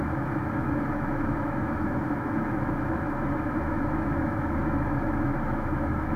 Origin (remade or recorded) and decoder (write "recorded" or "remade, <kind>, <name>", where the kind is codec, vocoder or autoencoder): remade, autoencoder, DAC-VAE